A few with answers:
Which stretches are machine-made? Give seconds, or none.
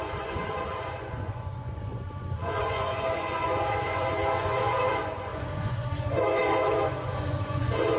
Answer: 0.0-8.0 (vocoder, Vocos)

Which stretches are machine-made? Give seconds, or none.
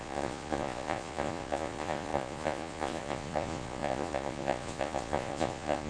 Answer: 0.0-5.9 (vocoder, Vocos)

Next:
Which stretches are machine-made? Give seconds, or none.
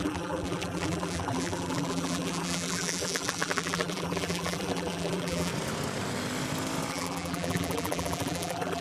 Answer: 0.0-5.5 (vocoder, BigVGAN v2); 6.9-8.8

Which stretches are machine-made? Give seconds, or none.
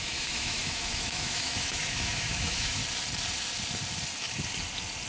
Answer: 0.0-2.8 (autoencoder, DAC-VAE)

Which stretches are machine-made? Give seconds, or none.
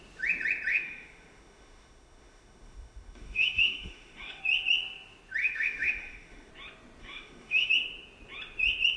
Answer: 0.7-4.4 (autoencoder, DAC-VAE); 5.4-6.5; 7.0-7.7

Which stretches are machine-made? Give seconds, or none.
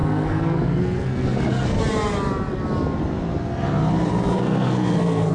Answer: 0.0-1.8 (codec, SNAC); 4.3-5.3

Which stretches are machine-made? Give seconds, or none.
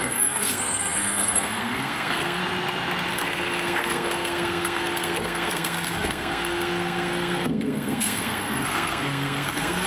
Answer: 0.0-2.4 (codec, SNAC); 3.1-9.9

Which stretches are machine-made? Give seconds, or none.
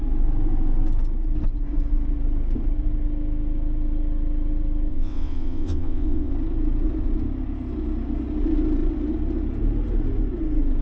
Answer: 4.9-6.3 (vocoder, WaveNeXt)